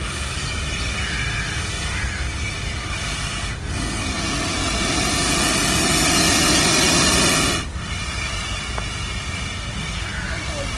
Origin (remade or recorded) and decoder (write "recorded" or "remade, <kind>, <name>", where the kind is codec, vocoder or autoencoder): recorded